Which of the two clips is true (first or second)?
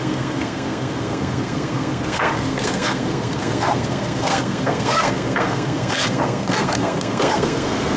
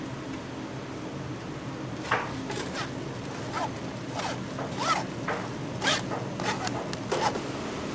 second